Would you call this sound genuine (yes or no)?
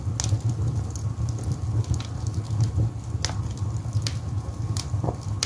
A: yes